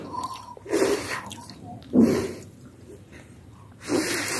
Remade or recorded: remade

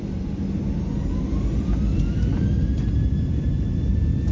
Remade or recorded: recorded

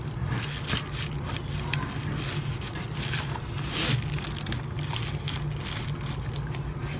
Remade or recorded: recorded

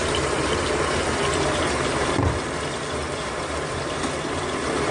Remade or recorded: remade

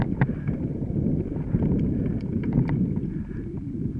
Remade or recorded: recorded